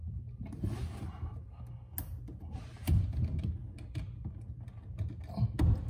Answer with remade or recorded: recorded